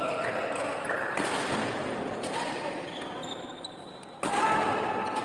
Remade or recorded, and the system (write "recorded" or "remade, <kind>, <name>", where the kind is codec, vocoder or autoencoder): recorded